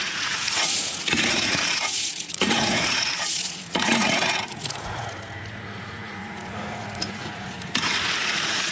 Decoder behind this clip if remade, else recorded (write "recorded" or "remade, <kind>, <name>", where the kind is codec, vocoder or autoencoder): remade, vocoder, Vocos